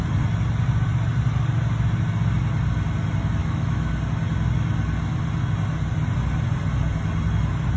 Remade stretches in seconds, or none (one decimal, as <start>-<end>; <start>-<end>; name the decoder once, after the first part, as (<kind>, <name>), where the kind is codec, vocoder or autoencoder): 3.4-3.9 (autoencoder, DAC-VAE)